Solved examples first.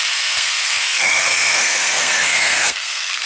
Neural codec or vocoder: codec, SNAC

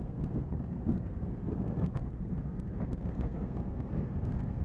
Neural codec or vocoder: codec, SNAC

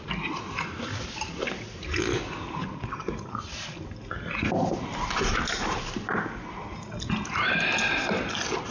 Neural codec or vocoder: none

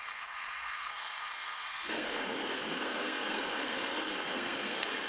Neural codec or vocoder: codec, SNAC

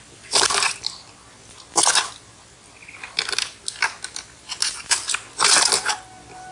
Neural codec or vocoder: none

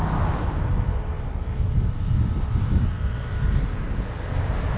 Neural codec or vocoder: none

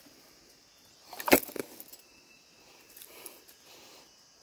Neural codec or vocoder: none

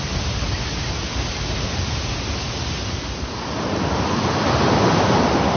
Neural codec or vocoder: none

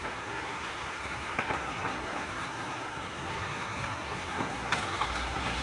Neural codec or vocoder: codec, SNAC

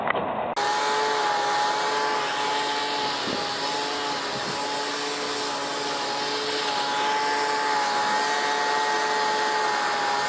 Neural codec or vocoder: none